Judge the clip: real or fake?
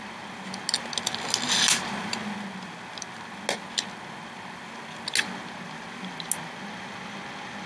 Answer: real